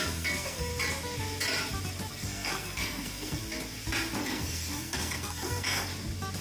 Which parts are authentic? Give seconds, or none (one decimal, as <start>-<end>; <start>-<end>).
0.7-2.1; 3.4-4.2; 5.9-6.4